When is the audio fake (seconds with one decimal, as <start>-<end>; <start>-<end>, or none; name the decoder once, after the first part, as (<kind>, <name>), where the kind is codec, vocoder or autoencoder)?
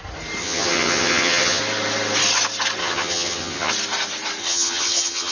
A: 0.4-1.6 (vocoder, HiFi-GAN); 2.8-3.7; 4.4-5.3